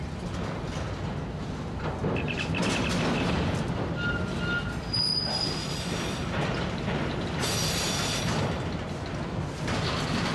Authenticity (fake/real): real